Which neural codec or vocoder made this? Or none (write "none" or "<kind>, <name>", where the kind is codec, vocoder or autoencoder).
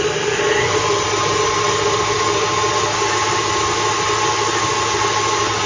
none